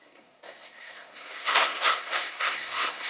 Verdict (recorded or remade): remade